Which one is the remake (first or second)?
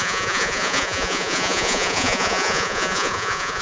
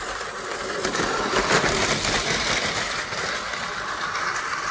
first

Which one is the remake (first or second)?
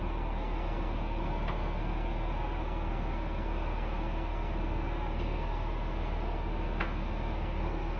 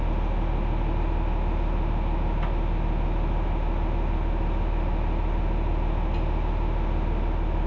first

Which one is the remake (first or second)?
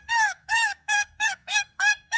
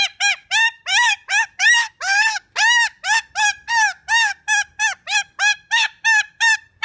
first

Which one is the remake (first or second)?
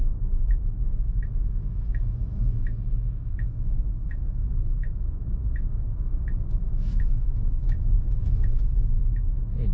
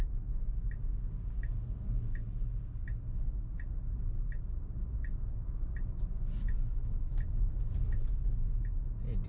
first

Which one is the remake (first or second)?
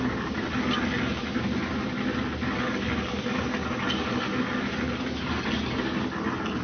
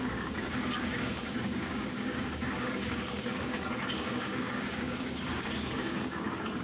second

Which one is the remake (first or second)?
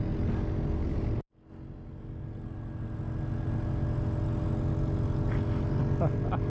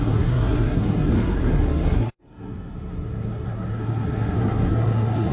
second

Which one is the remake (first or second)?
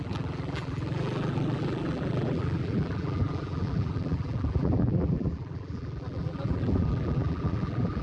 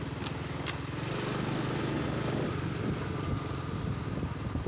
first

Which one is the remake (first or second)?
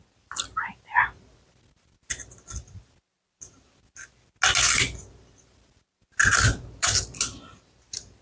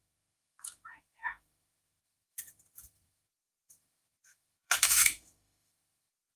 second